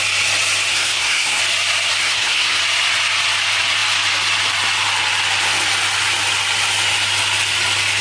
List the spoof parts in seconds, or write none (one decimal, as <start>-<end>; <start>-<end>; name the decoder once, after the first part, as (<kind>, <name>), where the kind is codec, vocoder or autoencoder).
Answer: 0.7-1.4 (codec, SNAC); 1.9-2.6